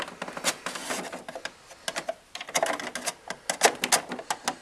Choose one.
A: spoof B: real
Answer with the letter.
B